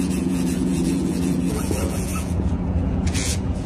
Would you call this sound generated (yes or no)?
yes